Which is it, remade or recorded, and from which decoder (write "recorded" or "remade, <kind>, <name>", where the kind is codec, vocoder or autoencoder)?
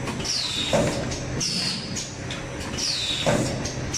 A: recorded